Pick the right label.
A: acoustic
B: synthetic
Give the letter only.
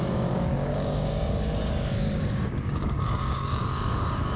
B